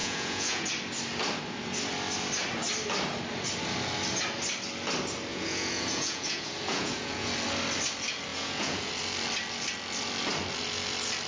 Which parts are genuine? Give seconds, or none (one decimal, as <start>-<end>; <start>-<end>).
0.7-5.3; 7.3-8.3; 8.9-11.3